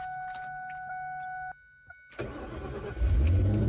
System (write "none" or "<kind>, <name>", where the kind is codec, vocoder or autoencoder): none